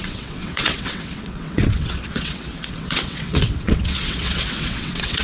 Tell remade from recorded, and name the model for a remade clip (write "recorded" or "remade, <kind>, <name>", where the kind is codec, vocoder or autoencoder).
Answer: remade, vocoder, WaveNeXt